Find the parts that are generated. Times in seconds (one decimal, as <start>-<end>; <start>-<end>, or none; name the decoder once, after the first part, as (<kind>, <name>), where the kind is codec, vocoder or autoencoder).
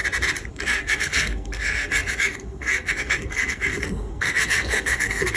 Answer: 0.5-5.4 (codec, SNAC)